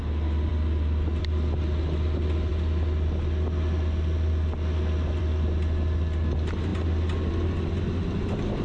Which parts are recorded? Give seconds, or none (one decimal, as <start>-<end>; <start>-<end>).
0.0-8.6